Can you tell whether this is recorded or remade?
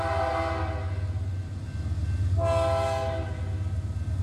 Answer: recorded